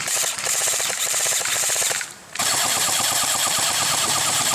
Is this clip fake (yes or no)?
yes